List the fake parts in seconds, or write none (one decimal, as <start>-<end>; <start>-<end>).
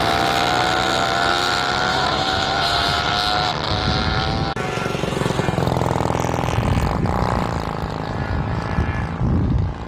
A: 1.9-3.1